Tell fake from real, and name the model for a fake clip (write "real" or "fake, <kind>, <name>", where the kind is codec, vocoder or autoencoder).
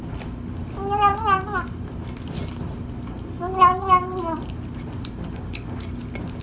real